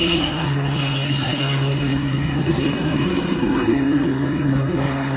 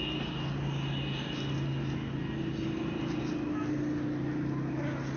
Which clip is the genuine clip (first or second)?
second